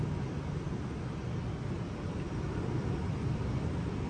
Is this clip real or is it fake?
real